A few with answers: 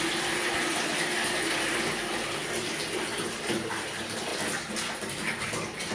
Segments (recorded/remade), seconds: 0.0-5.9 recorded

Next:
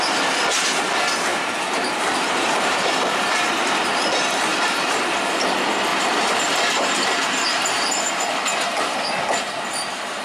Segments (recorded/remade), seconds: 0.0-1.3 recorded; 1.3-3.5 remade; 3.5-4.5 recorded; 4.5-5.1 remade; 5.1-5.9 recorded; 5.9-8.0 remade; 8.0-10.2 recorded

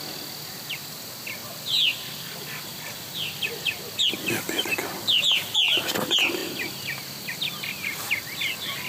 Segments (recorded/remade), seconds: 0.0-1.4 recorded; 1.4-4.1 remade; 4.1-6.4 recorded; 6.4-8.1 remade; 8.1-8.9 recorded